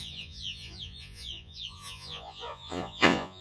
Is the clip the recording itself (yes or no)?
no